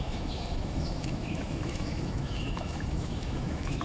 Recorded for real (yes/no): no